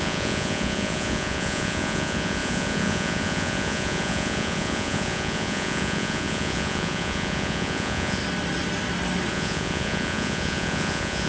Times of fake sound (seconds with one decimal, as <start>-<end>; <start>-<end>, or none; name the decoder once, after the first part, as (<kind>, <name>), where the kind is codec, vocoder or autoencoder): 0.0-8.2 (vocoder, Vocos); 9.3-11.3